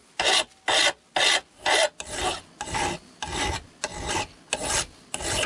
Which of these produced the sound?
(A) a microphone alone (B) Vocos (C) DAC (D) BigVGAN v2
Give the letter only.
A